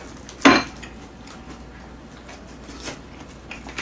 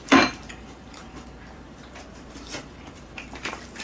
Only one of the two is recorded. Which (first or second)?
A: first